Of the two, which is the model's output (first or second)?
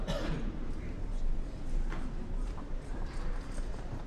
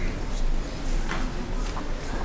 first